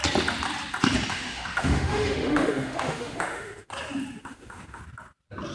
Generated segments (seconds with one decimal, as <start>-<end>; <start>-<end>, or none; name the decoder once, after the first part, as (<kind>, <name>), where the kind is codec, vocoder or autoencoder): 1.1-3.7 (autoencoder, DAC-VAE); 4.2-4.8